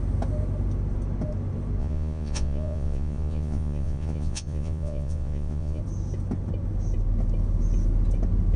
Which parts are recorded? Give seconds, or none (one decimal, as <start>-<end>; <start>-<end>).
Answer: 0.0-1.8; 5.8-8.6